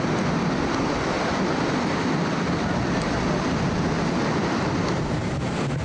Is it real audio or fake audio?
real